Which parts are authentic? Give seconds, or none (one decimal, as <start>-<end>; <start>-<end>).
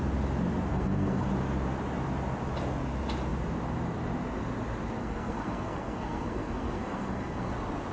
0.0-0.7; 1.3-5.0; 7.5-7.9